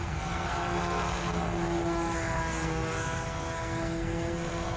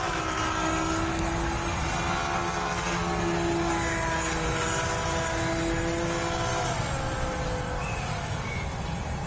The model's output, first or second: first